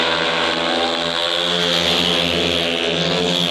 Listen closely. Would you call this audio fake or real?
real